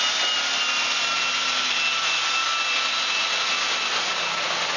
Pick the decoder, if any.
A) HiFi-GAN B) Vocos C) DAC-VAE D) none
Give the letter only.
D